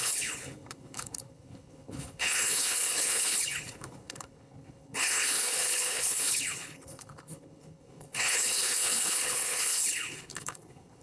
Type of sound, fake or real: fake